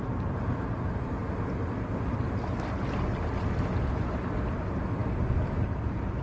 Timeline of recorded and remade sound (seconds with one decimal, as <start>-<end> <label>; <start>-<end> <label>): 0.0-6.2 recorded